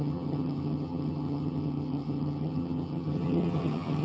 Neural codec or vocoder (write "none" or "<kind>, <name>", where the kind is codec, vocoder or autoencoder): vocoder, HiFi-GAN